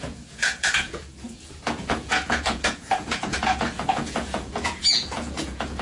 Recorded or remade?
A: remade